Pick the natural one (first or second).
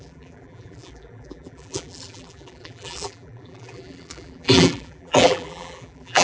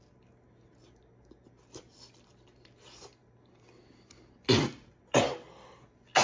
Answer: second